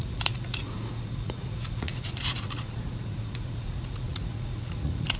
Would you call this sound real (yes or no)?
no